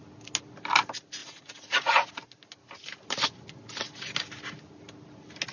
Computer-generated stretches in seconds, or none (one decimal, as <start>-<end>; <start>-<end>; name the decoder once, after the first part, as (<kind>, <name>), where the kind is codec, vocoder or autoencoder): 1.2-2.1 (vocoder, Vocos)